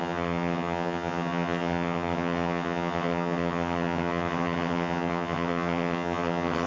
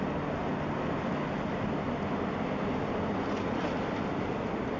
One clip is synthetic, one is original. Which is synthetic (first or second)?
first